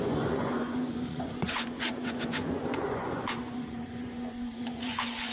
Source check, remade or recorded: remade